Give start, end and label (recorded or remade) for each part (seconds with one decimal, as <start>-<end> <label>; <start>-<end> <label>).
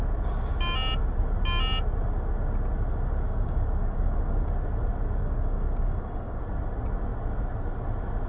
0.0-3.3 recorded; 3.3-4.5 remade; 4.5-5.2 recorded; 5.2-6.4 remade; 6.4-8.3 recorded